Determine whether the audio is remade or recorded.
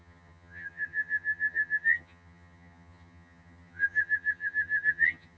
remade